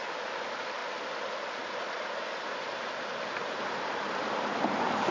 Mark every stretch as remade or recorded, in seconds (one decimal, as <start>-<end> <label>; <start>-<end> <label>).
0.0-5.1 recorded